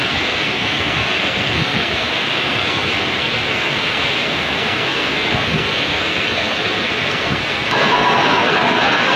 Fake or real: fake